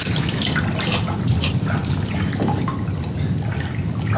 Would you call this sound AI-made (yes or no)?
no